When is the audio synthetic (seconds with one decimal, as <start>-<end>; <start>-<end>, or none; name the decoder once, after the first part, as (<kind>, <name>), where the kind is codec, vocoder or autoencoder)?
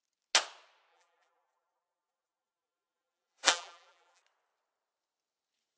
0.9-4.2 (vocoder, BigVGAN v2)